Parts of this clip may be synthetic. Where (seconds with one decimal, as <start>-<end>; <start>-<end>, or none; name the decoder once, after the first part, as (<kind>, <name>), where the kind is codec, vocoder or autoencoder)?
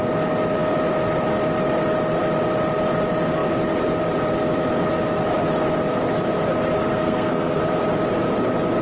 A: 6.9-7.6 (codec, SNAC)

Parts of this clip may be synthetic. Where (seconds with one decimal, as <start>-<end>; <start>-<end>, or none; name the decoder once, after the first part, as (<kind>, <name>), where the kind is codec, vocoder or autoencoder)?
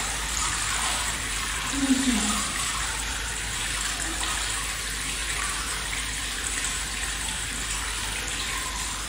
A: 0.4-3.6 (vocoder, BigVGAN v2); 5.2-7.4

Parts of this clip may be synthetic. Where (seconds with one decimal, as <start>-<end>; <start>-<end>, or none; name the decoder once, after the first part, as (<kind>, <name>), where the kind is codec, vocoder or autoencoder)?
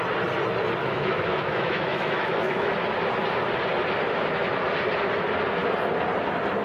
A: 0.8-2.7 (autoencoder, DAC-VAE)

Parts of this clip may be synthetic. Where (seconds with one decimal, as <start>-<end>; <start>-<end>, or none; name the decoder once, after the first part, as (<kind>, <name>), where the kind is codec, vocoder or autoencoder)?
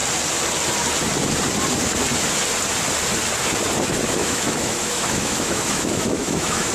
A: 4.2-6.7 (autoencoder, DAC-VAE)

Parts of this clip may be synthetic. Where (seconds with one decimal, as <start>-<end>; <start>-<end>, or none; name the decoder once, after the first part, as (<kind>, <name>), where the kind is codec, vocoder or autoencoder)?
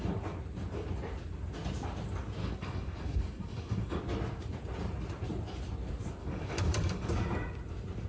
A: 2.4-4.0 (codec, DAC); 6.2-7.1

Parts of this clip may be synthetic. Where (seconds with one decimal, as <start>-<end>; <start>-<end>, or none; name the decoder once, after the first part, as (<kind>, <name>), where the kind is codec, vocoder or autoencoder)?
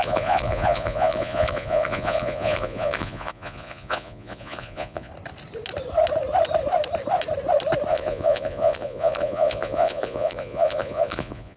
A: 0.0-5.1 (vocoder, Vocos); 7.9-11.6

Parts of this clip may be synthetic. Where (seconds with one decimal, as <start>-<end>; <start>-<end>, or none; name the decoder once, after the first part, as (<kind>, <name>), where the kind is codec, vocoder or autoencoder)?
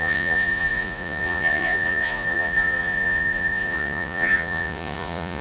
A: 0.0-5.4 (vocoder, Vocos)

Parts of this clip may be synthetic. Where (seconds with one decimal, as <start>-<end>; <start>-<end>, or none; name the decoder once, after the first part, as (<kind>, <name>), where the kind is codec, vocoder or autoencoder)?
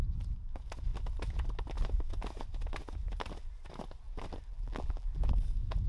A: 4.5-5.3 (vocoder, BigVGAN v2)